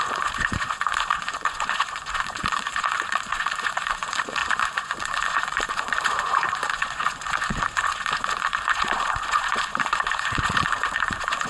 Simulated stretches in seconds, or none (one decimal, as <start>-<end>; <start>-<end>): 0.0-11.5

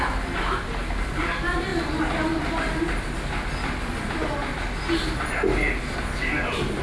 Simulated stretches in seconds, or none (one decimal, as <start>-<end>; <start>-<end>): none

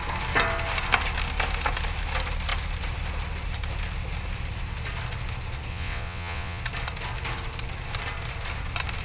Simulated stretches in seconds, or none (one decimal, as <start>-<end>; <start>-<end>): 5.7-6.6

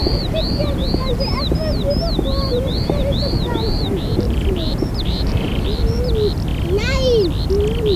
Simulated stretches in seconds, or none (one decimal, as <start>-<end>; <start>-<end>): 0.0-1.0; 2.3-5.6

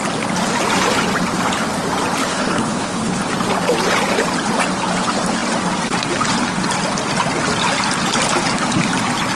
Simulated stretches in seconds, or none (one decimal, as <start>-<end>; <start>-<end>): 2.2-3.2